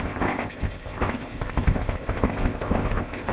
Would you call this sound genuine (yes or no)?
no